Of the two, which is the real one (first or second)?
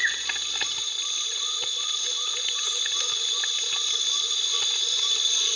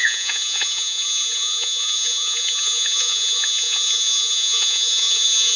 first